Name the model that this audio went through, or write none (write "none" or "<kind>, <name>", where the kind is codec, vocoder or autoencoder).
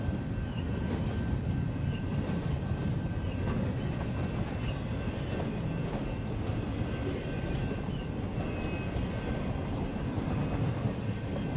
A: none